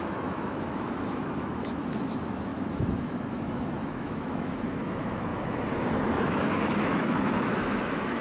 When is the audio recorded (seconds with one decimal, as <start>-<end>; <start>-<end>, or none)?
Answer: none